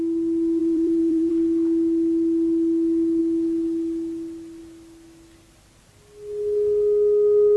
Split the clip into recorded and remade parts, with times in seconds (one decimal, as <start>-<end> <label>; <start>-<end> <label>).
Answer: 0.0-0.6 recorded; 0.6-1.3 remade; 1.3-7.6 recorded